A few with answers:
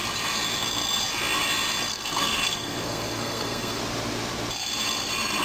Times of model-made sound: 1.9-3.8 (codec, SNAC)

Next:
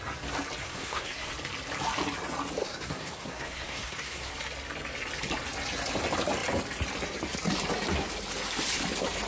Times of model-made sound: 0.6-1.3 (codec, SNAC); 2.6-4.3

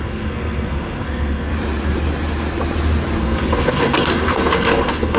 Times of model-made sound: 0.0-1.5 (codec, SNAC); 3.2-5.2